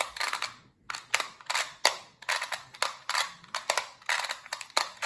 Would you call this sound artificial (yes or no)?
no